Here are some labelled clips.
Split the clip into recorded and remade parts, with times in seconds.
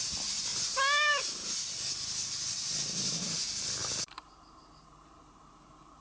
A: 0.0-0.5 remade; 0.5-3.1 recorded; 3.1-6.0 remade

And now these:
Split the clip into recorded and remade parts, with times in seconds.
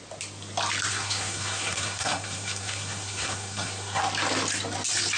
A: 0.0-0.9 recorded; 0.9-4.0 remade; 4.0-5.2 recorded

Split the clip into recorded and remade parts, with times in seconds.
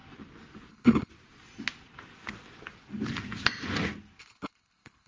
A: 0.0-0.7 recorded; 0.7-1.1 remade; 1.1-4.2 recorded; 4.2-5.1 remade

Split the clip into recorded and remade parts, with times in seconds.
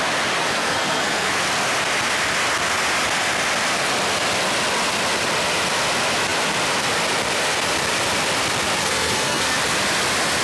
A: 0.0-0.4 recorded; 0.4-1.4 remade; 1.4-8.8 recorded; 8.8-9.6 remade; 9.6-10.4 recorded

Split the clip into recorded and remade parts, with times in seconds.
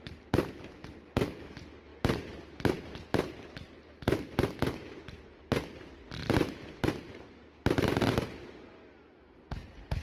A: 0.0-10.0 recorded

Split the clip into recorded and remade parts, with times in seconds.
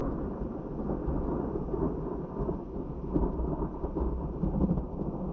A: 0.0-0.7 remade; 0.7-5.3 recorded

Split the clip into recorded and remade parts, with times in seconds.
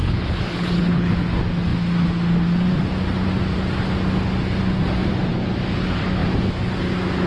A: 0.0-1.1 remade; 1.1-7.3 recorded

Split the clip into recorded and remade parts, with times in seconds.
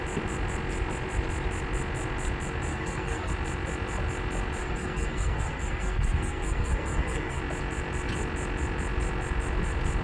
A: 0.0-2.7 recorded; 2.7-3.3 remade; 3.3-4.6 recorded; 4.6-7.4 remade; 7.4-10.0 recorded